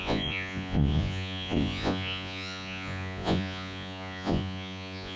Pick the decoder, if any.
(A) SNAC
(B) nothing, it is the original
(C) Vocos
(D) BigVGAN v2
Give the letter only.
C